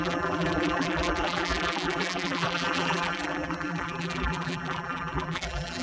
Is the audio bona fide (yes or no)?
no